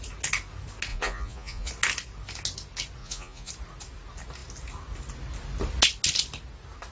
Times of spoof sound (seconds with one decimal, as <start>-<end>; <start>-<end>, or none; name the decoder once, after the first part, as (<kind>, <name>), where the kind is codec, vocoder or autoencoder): 0.9-1.7 (vocoder, Vocos); 3.0-3.5